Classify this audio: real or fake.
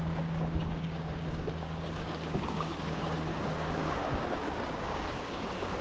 fake